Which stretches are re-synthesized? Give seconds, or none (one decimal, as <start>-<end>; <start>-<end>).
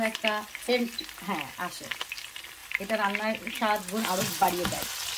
none